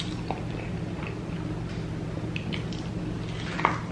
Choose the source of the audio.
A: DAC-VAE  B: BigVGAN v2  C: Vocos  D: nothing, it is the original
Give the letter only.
D